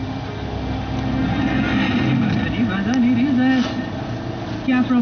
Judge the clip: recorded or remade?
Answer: recorded